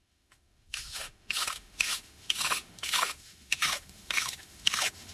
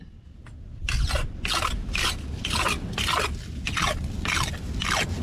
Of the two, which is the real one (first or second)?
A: second